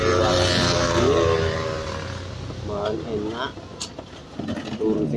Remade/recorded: recorded